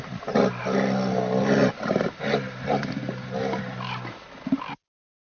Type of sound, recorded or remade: recorded